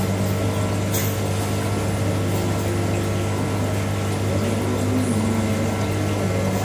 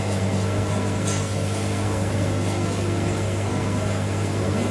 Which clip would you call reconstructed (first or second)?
second